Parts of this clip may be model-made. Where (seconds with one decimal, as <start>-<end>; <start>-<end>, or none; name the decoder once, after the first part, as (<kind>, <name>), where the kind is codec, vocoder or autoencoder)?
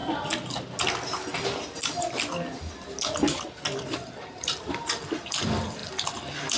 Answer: 3.8-6.6 (vocoder, BigVGAN v2)